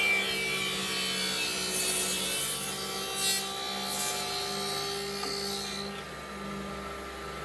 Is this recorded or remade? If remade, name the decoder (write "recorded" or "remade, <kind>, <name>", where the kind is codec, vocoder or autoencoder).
recorded